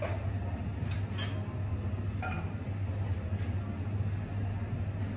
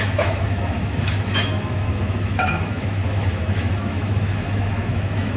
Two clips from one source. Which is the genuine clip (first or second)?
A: first